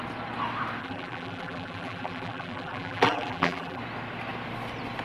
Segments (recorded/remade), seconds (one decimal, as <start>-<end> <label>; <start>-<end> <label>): 0.0-0.8 recorded; 0.8-3.8 remade; 3.8-5.0 recorded